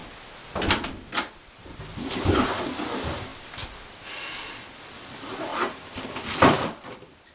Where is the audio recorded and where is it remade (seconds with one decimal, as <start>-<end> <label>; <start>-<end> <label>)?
0.0-1.2 recorded; 1.2-7.3 remade